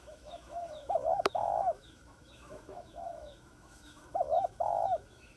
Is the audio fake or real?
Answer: fake